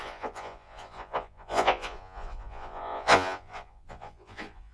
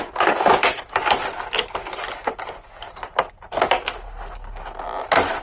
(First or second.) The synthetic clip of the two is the first